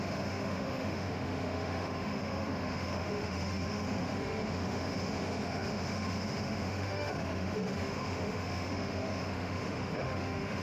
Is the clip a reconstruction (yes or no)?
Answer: yes